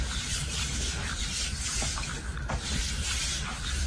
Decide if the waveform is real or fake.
fake